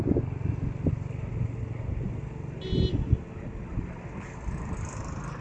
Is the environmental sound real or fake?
real